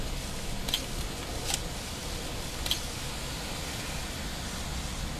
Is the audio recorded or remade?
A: recorded